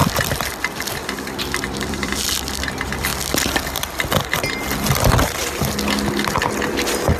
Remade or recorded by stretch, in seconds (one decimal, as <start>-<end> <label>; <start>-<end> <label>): 0.0-1.8 recorded; 1.8-3.1 remade; 3.1-6.5 recorded; 6.5-7.2 remade